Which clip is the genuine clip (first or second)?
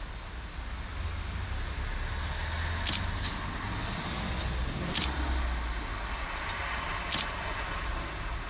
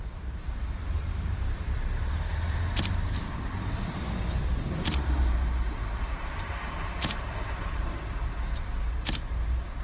first